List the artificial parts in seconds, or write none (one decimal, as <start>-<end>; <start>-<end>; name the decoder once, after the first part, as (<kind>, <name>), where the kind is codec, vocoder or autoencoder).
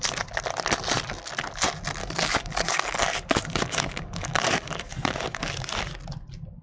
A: 2.0-5.5 (codec, DAC)